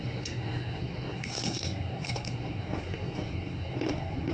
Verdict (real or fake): fake